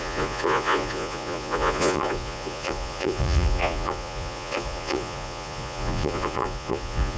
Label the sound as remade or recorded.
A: remade